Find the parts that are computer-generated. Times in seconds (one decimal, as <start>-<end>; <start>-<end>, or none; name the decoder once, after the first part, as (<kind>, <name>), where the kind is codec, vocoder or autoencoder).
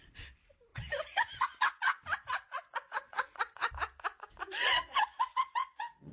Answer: 0.7-3.7 (vocoder, WaveNeXt); 4.6-6.1